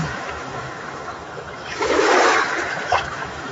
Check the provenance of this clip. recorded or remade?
remade